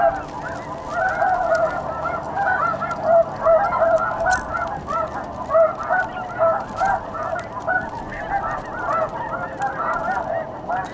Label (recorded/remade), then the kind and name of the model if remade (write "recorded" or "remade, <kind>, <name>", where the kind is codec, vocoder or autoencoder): recorded